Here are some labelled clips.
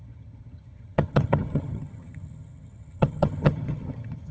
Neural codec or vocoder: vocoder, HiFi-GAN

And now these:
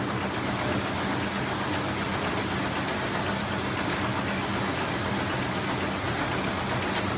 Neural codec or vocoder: none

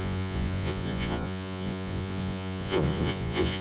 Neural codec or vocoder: vocoder, Vocos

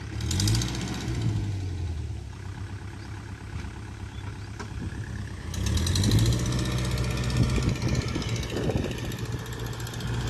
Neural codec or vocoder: none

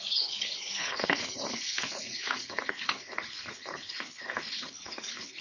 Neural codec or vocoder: codec, HILCodec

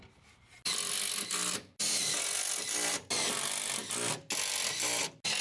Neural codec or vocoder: none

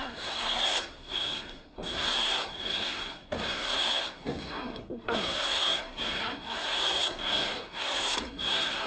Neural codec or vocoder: codec, SNAC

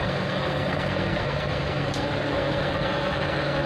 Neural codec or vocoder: codec, SNAC